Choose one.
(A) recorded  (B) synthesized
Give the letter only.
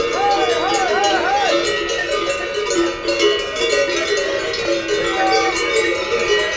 A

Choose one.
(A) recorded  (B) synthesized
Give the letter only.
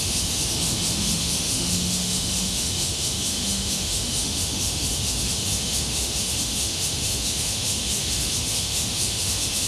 B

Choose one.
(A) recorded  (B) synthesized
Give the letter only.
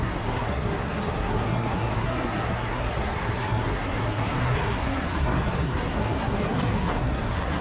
B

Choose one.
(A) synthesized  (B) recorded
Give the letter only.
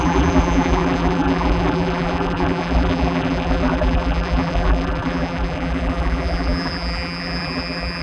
A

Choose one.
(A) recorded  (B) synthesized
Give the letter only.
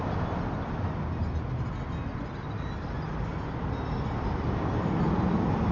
A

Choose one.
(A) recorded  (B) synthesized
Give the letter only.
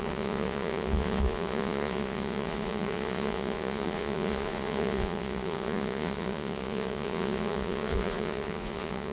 B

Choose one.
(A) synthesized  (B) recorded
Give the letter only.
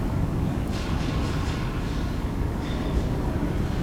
A